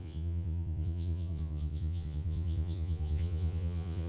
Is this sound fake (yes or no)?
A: yes